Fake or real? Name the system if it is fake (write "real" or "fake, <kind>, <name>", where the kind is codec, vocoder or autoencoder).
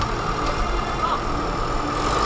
real